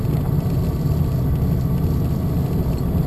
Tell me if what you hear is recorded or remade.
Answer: recorded